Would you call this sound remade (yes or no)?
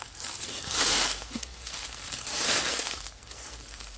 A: yes